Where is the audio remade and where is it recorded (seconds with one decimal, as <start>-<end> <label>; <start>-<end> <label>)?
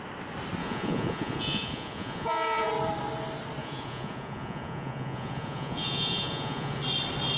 0.0-0.6 recorded; 0.6-2.7 remade; 2.7-3.6 recorded; 3.6-6.8 remade; 6.8-7.4 recorded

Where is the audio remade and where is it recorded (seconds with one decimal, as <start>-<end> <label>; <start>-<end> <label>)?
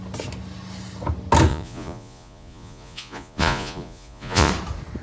0.0-1.5 recorded; 1.5-4.5 remade; 4.5-5.0 recorded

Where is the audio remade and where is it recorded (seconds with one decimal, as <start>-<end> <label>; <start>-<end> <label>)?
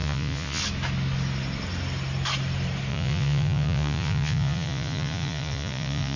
0.0-0.6 remade; 0.6-2.9 recorded; 2.9-6.2 remade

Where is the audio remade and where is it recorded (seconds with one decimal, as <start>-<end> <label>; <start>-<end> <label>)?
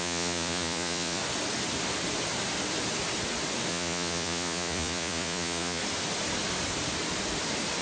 0.0-1.2 remade; 1.2-3.7 recorded; 3.7-5.8 remade; 5.8-7.8 recorded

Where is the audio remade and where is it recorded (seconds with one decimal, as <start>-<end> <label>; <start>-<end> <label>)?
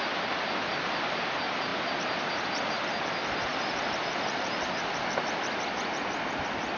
0.0-6.8 recorded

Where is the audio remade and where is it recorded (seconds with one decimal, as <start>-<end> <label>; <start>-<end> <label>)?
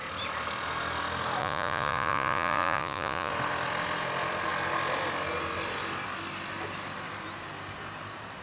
0.0-1.4 recorded; 1.4-3.3 remade; 3.3-8.4 recorded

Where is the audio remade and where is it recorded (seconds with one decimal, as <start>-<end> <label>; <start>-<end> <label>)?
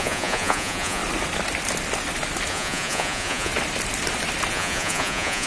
0.0-1.0 remade; 1.0-2.5 recorded; 2.5-3.5 remade; 3.5-4.5 recorded; 4.5-5.5 remade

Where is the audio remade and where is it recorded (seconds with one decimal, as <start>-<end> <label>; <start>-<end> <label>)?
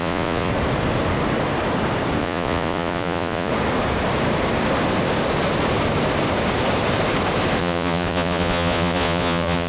0.0-0.5 remade; 0.5-2.2 recorded; 2.2-3.5 remade; 3.5-7.6 recorded; 7.6-9.7 remade